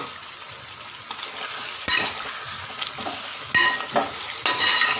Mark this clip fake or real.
real